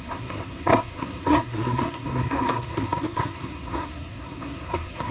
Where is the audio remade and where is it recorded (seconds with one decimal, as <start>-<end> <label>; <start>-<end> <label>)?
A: 0.0-5.1 remade